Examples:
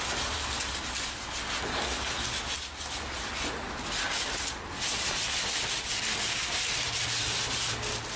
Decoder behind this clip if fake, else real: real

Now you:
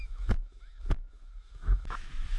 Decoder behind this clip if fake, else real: fake, autoencoder, DAC-VAE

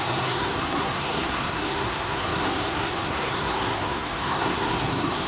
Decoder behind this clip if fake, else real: fake, codec, SNAC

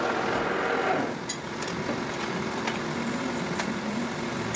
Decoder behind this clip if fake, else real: real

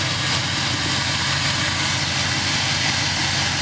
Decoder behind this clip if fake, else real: real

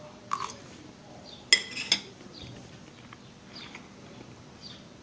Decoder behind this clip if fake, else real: real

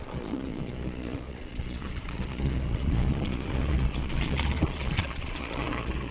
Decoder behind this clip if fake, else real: fake, vocoder, Vocos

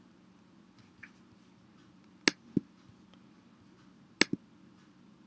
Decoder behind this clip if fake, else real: real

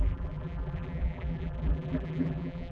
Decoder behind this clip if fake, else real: fake, vocoder, BigVGAN v2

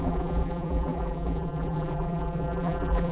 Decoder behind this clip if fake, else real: fake, vocoder, BigVGAN v2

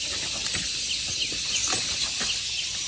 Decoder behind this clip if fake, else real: real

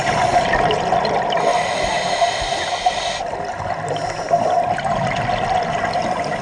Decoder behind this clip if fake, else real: real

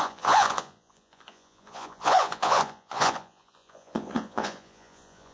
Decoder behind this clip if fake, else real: fake, vocoder, Vocos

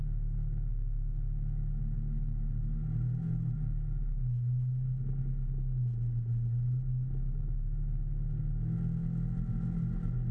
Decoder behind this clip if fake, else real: real